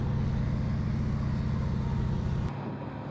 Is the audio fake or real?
real